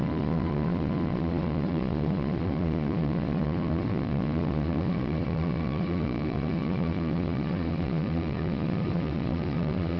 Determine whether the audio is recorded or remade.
remade